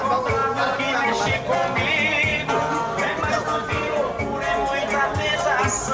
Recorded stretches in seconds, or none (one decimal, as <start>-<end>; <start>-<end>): 0.0-2.3; 4.2-5.9